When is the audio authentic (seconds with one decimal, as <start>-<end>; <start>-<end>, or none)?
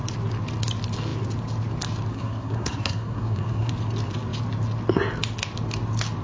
0.0-2.1; 3.7-6.2